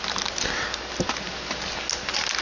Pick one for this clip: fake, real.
real